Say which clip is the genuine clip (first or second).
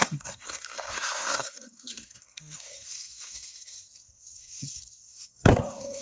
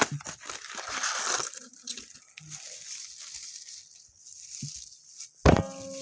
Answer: second